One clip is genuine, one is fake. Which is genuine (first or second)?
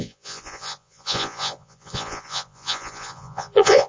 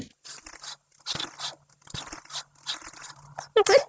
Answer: second